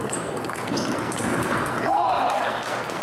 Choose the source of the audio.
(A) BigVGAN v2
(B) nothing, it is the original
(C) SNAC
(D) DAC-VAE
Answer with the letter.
C